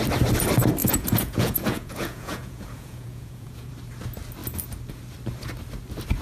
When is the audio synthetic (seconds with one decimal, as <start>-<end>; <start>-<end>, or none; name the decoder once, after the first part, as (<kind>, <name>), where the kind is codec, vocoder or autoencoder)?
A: 0.8-3.7 (vocoder, Vocos)